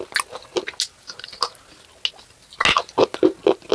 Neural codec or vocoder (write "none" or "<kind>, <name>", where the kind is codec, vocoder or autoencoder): none